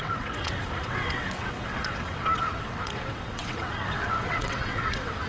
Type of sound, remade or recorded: remade